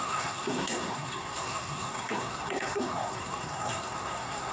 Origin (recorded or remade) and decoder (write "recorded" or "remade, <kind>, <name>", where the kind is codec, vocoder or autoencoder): remade, codec, SNAC